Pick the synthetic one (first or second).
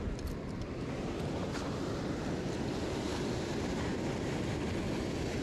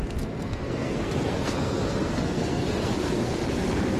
second